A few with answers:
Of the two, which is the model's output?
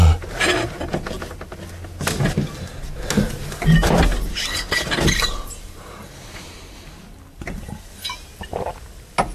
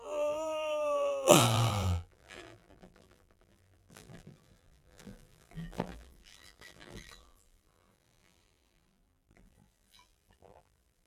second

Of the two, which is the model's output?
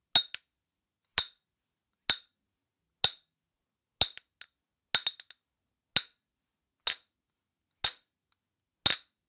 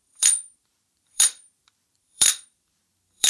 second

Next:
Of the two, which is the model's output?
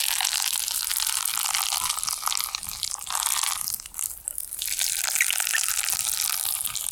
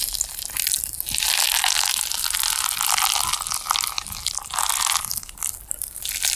first